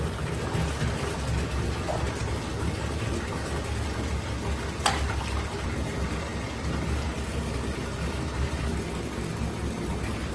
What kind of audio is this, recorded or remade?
recorded